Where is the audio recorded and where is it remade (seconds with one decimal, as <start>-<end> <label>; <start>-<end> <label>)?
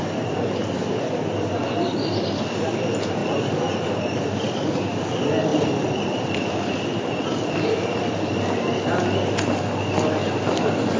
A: 0.0-5.5 recorded; 5.5-7.7 remade; 7.7-11.0 recorded